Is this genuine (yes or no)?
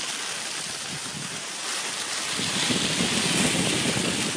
yes